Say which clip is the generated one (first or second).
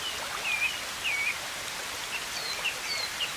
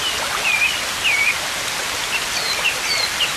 second